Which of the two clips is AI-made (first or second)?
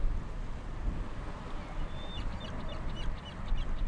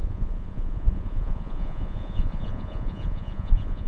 second